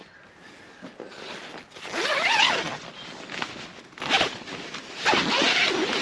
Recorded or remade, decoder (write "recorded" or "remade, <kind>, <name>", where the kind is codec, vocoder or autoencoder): recorded